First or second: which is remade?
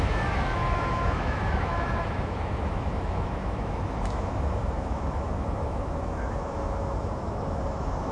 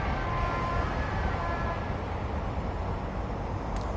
first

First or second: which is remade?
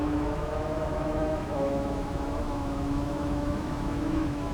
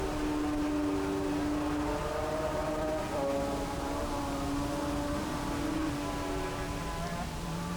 first